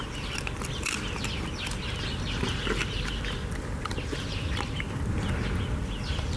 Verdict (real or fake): real